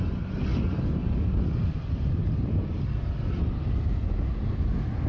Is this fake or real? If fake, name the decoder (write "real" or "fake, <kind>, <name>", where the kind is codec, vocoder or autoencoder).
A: real